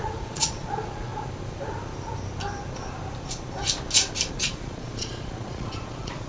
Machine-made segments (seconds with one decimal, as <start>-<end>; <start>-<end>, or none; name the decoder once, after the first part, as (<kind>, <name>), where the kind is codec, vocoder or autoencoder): 0.0-1.1 (vocoder, Vocos); 4.3-6.3